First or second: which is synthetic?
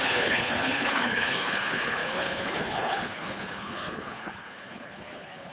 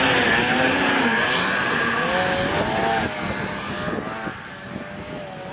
first